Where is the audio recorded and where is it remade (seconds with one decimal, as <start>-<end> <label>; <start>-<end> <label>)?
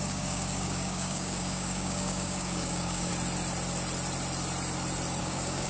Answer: 0.0-3.1 remade; 3.1-5.2 recorded; 5.2-5.7 remade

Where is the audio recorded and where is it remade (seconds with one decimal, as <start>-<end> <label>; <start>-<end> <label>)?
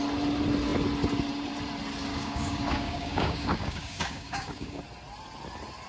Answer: 0.0-2.1 recorded; 2.1-4.8 remade; 4.8-5.9 recorded